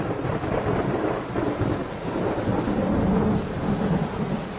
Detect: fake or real real